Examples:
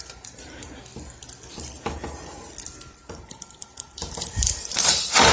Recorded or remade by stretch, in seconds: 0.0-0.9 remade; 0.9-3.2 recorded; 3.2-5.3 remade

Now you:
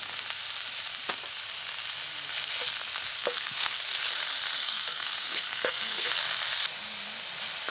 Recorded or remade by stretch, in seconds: 0.0-3.2 recorded; 3.2-3.8 remade; 3.8-4.6 recorded; 4.6-6.1 remade; 6.1-7.7 recorded

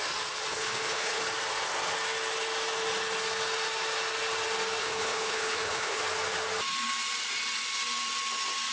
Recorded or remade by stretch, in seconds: 0.0-0.5 recorded; 0.5-1.2 remade; 1.2-4.8 recorded; 4.8-6.0 remade; 6.0-8.7 recorded

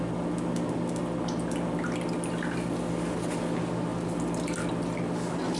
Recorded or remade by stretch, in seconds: 0.0-5.6 recorded

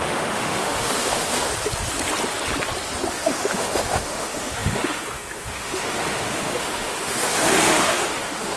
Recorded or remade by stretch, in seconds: 0.0-1.5 remade; 1.5-3.1 recorded; 3.1-8.6 remade

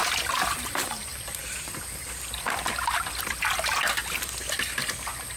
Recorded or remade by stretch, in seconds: 0.0-3.5 remade; 3.5-5.4 recorded

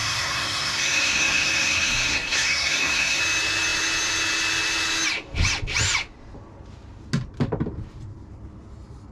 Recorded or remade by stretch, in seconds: 0.0-3.2 remade; 3.2-9.1 recorded